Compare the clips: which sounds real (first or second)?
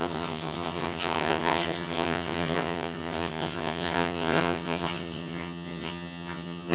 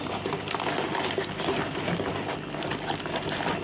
second